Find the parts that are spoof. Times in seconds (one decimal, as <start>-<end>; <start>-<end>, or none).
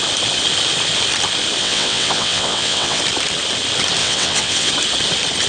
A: 1.6-3.0; 4.0-4.7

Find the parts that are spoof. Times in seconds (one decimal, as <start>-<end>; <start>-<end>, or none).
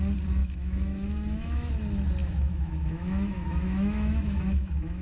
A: 0.4-1.7; 2.2-5.0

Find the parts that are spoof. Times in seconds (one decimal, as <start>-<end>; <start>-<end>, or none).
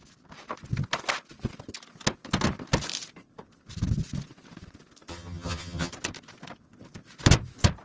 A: 5.1-5.9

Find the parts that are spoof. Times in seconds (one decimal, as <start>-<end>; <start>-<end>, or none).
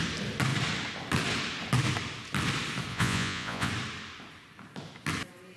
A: 2.9-3.7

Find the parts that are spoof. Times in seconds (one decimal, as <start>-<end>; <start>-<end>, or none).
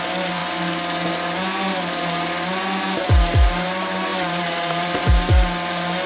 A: 4.1-5.1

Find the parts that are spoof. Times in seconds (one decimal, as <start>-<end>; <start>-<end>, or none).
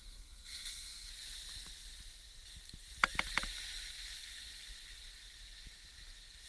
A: 0.0-1.1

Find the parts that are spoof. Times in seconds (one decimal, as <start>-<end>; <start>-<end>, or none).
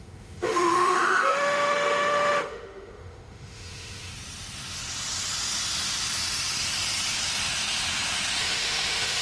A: 0.0-4.1; 8.4-9.2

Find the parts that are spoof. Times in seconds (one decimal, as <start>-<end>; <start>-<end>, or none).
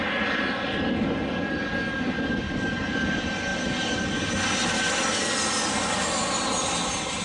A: none